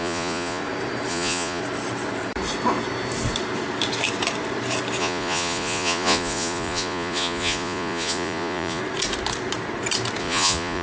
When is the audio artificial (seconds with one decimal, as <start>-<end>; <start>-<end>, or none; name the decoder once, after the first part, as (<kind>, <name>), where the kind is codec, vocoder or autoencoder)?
0.0-0.6 (vocoder, Vocos); 1.1-1.6; 5.0-8.8; 10.2-10.8